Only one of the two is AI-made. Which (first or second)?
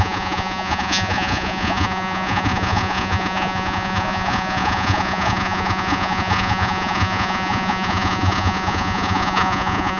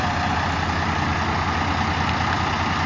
first